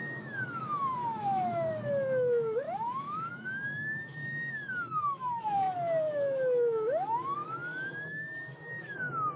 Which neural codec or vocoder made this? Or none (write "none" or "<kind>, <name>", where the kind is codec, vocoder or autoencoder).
autoencoder, DAC-VAE